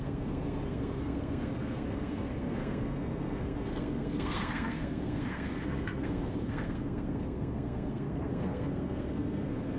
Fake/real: fake